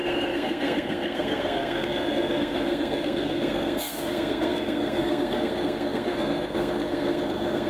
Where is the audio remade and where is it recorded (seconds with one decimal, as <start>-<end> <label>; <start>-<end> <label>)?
0.0-7.7 remade

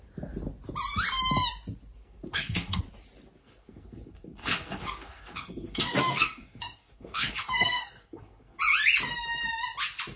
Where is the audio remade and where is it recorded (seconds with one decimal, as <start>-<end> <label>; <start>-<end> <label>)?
0.0-2.0 recorded; 2.0-2.8 remade; 2.8-3.4 recorded; 3.4-8.6 remade; 8.6-10.2 recorded